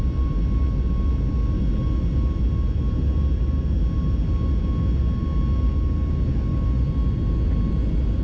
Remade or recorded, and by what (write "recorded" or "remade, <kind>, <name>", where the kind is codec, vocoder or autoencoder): recorded